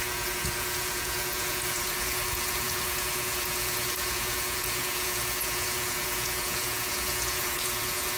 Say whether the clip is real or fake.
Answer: fake